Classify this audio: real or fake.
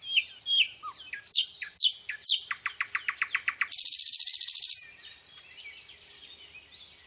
real